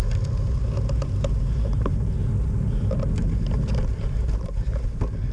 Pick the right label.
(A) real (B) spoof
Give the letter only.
A